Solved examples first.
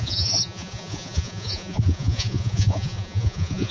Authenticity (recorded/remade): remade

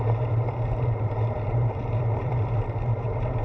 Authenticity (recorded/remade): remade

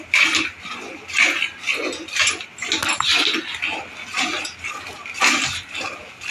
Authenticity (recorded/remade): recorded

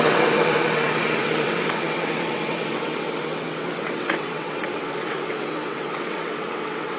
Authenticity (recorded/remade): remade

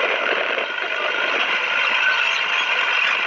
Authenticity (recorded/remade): recorded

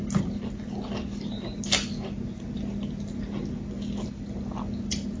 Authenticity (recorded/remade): recorded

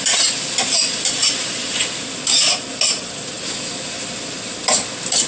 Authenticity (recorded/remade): recorded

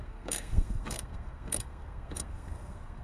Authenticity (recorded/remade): remade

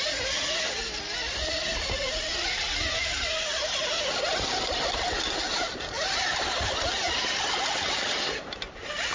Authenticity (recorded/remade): recorded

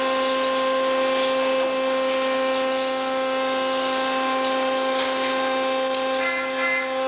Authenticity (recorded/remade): recorded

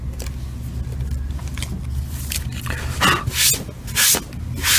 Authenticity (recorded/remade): recorded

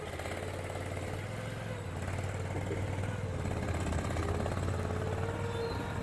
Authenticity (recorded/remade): recorded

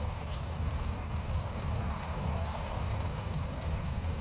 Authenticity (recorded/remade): remade